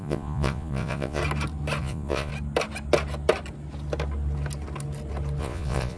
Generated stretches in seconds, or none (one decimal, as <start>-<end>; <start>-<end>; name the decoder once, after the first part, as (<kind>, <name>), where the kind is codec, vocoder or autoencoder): 0.0-1.2 (vocoder, Vocos); 1.8-2.3; 5.4-6.0

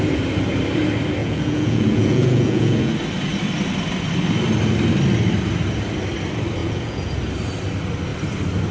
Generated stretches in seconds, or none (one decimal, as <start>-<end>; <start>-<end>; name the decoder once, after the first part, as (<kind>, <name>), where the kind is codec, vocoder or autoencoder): 1.2-2.9 (vocoder, Vocos); 6.6-7.1

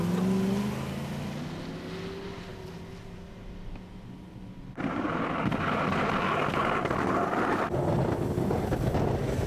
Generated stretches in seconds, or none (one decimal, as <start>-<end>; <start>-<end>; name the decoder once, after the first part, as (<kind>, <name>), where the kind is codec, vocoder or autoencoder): none

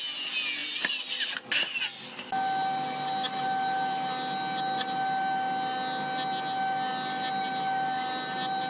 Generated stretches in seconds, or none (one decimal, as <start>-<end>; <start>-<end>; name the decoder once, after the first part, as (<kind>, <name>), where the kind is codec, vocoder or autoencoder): none

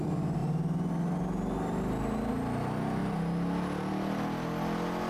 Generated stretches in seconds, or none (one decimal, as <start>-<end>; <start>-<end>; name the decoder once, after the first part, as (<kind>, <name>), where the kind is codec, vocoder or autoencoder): none

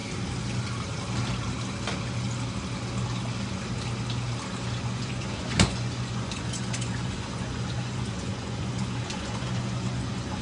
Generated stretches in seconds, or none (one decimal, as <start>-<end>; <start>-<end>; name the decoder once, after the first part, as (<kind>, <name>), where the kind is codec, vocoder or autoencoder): 4.8-10.4 (vocoder, Vocos)

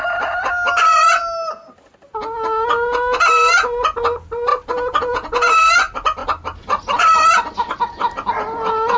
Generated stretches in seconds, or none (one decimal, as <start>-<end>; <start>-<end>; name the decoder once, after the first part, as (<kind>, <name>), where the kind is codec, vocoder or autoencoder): none

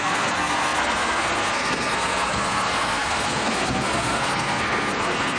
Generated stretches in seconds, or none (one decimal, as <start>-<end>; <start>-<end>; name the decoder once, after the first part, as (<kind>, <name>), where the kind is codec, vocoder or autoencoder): 0.0-5.4 (codec, SNAC)